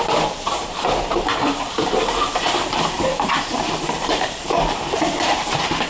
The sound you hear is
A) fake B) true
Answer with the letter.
A